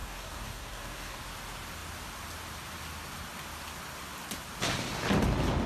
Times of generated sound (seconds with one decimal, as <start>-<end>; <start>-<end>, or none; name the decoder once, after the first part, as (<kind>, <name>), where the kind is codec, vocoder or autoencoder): 0.0-1.2 (codec, DAC)

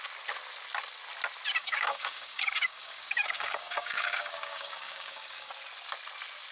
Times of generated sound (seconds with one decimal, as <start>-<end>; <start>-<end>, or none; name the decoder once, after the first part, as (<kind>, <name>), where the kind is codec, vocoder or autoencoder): 1.6-5.5 (codec, DAC)

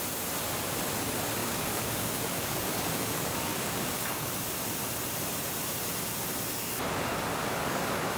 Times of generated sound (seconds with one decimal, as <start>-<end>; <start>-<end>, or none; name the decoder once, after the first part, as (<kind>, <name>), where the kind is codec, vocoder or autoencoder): 1.4-4.3 (codec, DAC); 7.3-8.2

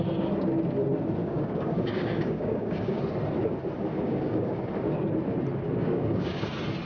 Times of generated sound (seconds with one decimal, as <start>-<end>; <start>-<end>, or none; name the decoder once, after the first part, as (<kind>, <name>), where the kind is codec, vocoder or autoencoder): 1.2-3.0 (codec, DAC); 3.9-4.6; 5.8-6.4

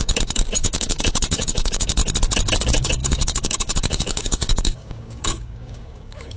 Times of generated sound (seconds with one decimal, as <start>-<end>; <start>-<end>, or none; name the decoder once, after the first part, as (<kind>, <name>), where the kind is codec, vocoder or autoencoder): 0.0-2.0 (codec, DAC); 2.6-6.4